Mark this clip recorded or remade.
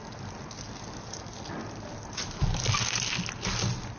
recorded